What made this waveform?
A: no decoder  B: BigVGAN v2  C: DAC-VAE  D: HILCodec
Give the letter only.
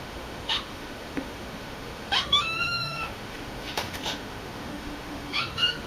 C